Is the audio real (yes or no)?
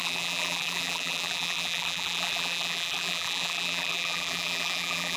no